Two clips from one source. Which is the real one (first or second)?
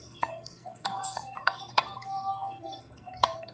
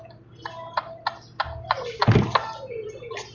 second